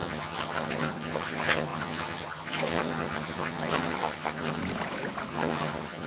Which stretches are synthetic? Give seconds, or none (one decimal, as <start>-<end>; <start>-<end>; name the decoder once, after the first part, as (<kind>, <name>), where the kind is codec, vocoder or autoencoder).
0.0-4.6 (vocoder, HiFi-GAN); 5.3-6.1